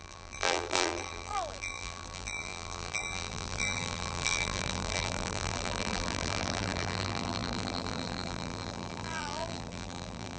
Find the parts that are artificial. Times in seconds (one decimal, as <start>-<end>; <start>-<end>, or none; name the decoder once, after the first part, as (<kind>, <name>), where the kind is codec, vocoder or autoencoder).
0.0-10.4 (vocoder, BigVGAN v2)